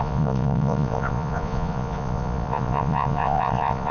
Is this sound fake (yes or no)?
yes